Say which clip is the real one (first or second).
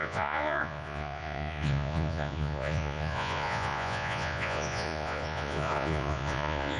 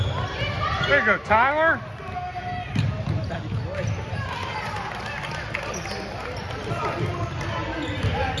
second